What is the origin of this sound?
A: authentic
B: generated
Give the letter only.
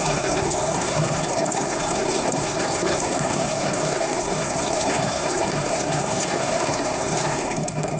B